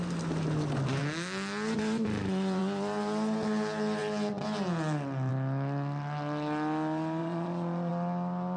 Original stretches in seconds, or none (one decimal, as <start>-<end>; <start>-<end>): 0.0-7.2; 7.9-8.6